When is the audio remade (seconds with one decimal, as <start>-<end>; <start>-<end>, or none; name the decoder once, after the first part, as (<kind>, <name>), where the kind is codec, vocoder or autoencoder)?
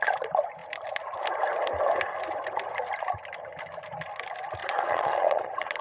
4.6-5.8 (vocoder, Vocos)